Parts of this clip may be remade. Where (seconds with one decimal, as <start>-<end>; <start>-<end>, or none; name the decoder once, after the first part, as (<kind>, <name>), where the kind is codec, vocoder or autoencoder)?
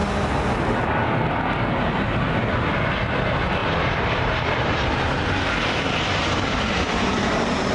3.6-7.3 (vocoder, BigVGAN v2)